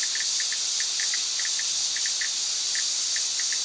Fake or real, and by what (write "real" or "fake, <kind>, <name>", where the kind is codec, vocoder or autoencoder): real